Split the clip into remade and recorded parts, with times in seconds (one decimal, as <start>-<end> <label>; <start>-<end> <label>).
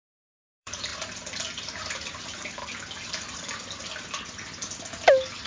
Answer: 0.0-0.9 remade; 0.9-1.6 recorded; 1.6-2.6 remade; 2.6-5.5 recorded